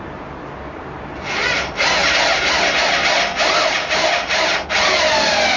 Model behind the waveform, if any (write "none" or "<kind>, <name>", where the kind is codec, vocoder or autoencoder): none